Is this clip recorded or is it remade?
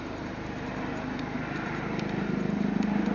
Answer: remade